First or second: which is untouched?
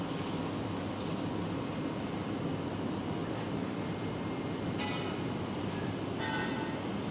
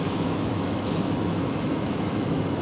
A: first